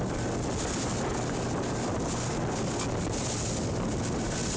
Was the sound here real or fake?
real